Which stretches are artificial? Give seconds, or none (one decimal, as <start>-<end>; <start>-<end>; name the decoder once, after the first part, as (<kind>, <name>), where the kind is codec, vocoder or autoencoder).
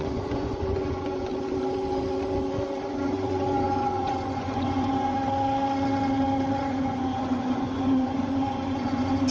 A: 0.0-1.3 (vocoder, Vocos); 2.9-5.2; 6.6-9.3